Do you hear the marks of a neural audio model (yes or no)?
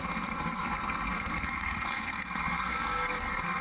yes